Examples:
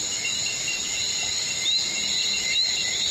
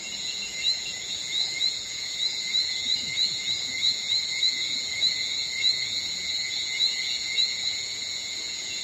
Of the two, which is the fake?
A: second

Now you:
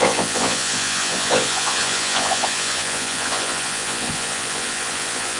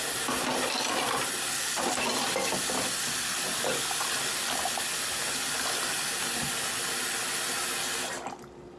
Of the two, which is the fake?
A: first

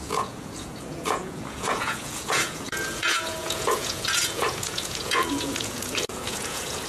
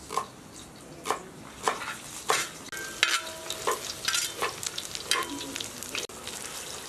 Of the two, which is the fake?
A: first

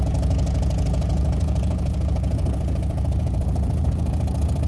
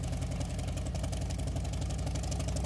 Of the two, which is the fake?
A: first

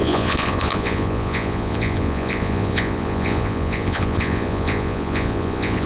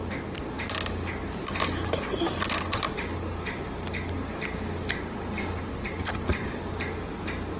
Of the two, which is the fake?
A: first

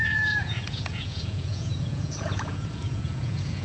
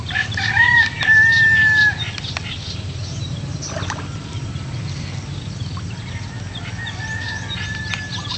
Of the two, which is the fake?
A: first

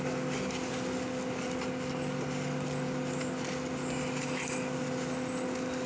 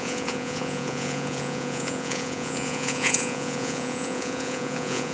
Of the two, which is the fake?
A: second